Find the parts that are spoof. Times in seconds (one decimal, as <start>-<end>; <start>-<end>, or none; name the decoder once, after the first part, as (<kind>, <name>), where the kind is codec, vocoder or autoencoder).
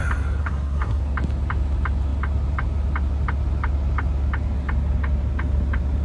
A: 0.4-1.0 (codec, SNAC)